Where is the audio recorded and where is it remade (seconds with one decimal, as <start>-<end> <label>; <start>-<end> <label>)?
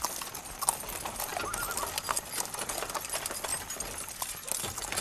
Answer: 0.0-5.0 recorded